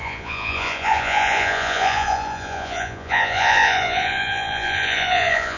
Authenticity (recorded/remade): remade